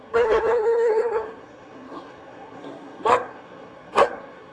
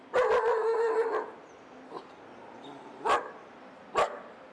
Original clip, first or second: second